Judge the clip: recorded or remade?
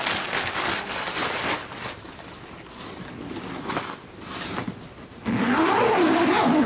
recorded